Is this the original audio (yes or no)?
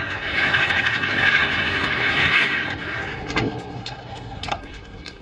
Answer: no